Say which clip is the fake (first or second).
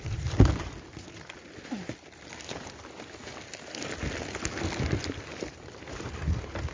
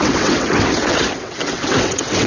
second